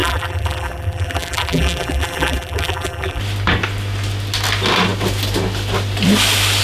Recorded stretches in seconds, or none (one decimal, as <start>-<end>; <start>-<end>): 3.2-6.6